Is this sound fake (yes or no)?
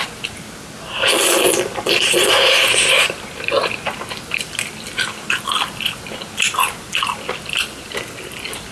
no